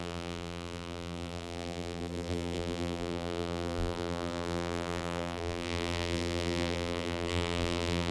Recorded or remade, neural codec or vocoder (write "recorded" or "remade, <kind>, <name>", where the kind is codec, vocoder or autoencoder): remade, vocoder, BigVGAN v2